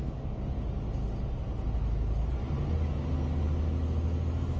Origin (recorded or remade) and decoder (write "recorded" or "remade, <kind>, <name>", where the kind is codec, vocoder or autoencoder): recorded